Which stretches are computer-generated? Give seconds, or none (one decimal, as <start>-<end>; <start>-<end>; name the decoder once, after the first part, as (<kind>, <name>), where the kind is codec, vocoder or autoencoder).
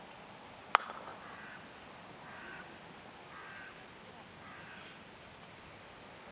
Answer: none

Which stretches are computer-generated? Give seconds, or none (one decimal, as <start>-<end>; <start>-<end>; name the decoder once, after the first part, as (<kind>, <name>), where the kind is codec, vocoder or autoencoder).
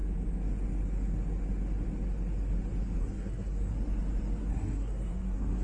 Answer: 3.0-3.7 (codec, SNAC); 4.5-5.6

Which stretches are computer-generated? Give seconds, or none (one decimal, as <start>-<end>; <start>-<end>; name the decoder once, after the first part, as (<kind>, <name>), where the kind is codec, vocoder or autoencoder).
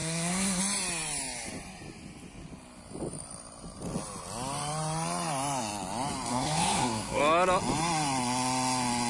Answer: 0.0-0.6 (codec, SNAC); 6.3-7.2